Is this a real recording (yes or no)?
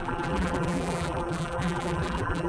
no